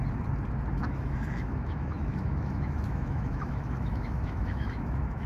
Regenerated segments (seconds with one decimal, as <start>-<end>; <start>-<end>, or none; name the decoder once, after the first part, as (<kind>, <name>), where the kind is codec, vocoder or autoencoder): 0.7-5.3 (autoencoder, DAC-VAE)